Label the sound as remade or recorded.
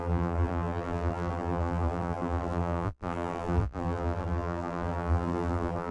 remade